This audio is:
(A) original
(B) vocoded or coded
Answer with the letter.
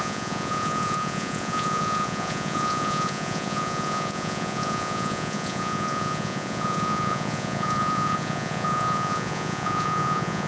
B